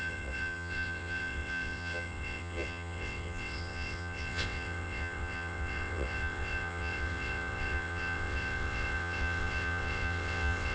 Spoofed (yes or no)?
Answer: yes